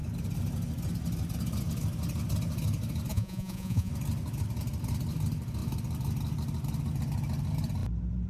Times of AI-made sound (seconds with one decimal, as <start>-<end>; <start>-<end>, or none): 3.1-3.9